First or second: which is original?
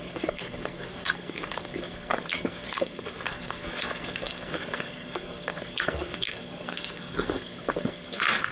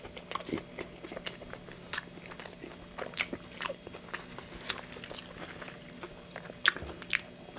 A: second